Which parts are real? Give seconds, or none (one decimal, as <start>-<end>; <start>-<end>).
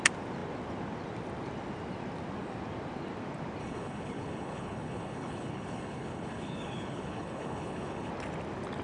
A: 0.0-3.6; 8.1-8.8